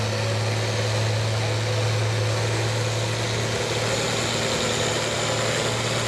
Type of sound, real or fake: real